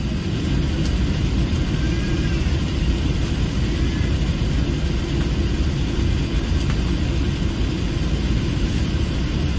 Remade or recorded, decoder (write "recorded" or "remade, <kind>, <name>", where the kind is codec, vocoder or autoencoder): recorded